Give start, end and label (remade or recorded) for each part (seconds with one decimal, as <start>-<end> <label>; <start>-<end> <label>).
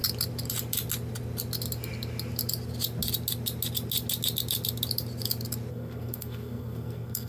0.0-5.7 recorded; 5.7-7.3 remade